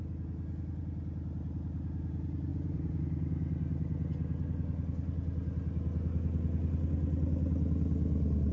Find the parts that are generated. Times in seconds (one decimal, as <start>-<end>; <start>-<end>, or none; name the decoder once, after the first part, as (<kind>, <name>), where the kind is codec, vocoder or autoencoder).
2.5-3.0 (vocoder, Vocos)